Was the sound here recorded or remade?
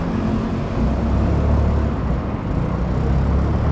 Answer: recorded